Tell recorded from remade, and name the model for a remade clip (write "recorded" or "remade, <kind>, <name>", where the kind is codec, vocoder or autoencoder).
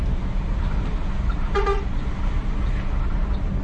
recorded